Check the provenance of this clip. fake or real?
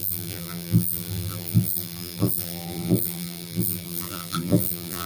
fake